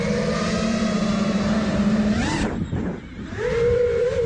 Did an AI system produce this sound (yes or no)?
yes